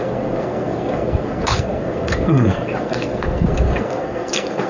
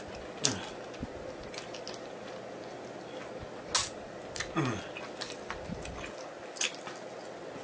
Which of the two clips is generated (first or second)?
first